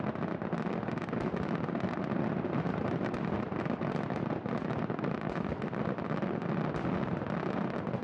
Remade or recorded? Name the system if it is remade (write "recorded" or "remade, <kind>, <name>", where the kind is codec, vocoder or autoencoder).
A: recorded